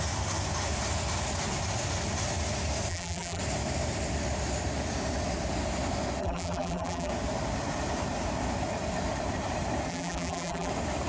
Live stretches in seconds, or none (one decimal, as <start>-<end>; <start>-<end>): 0.0-2.9; 3.4-6.2; 7.1-9.9; 10.7-11.1